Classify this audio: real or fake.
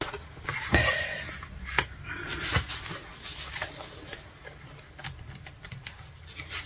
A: real